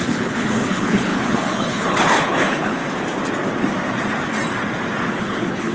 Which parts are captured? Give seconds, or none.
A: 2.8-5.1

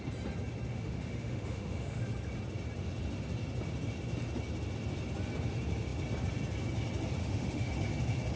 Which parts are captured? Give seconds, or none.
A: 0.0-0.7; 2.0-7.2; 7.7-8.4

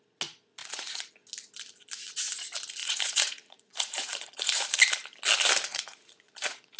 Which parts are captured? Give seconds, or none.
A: 0.0-0.6; 1.1-2.8; 4.8-5.7

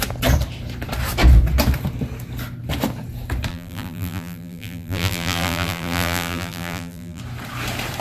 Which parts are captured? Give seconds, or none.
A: 0.0-3.5; 7.2-8.0

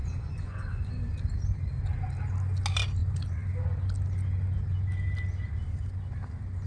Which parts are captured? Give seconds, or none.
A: 0.9-6.7

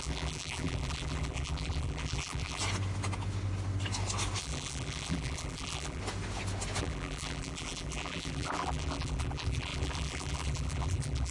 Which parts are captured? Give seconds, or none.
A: 2.6-4.4; 6.0-6.8